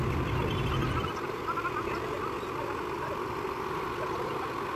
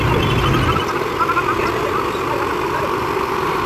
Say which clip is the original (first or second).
first